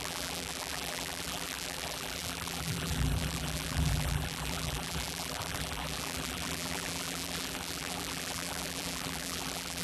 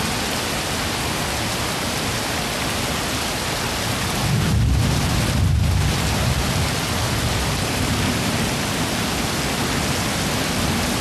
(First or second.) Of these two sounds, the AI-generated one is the first